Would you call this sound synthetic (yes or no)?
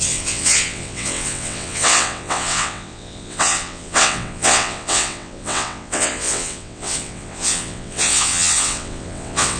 yes